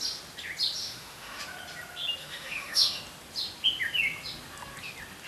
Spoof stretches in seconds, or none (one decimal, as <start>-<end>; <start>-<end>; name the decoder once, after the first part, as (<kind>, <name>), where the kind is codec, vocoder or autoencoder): 0.8-1.4 (autoencoder, DAC-VAE); 2.2-3.0